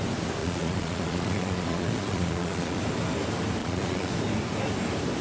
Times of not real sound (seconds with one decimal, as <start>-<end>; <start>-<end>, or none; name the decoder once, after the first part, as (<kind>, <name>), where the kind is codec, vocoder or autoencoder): 0.4-2.8 (vocoder, Vocos); 3.6-4.1